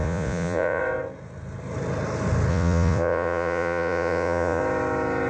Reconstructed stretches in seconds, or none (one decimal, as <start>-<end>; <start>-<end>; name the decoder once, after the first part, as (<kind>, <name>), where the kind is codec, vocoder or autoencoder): 0.0-0.8 (vocoder, Vocos); 2.5-4.6

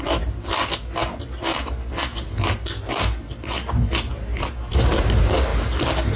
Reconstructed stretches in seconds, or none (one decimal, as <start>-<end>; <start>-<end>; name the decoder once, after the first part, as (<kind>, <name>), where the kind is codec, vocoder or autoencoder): none

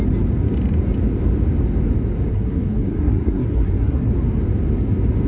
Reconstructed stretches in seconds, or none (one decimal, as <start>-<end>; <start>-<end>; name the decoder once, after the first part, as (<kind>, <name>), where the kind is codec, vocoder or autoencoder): 2.3-4.1 (codec, SNAC)

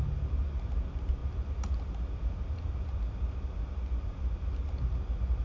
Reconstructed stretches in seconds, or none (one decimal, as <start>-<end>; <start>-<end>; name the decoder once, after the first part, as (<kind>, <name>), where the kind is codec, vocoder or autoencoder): none

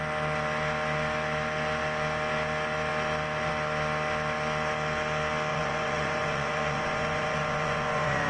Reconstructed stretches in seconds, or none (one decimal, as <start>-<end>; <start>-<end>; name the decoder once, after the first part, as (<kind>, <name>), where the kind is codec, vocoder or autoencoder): 5.5-8.3 (vocoder, Vocos)

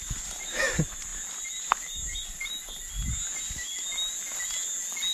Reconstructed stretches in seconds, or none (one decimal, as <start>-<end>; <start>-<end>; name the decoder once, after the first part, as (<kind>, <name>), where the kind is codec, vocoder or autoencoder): none

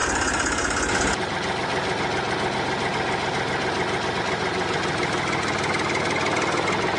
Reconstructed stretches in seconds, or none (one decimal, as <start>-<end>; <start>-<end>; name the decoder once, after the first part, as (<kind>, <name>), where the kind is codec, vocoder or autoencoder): none

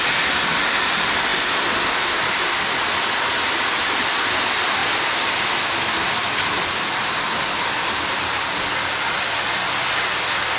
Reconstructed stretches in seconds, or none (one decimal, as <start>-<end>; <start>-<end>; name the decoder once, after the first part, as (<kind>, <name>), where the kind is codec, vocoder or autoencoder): none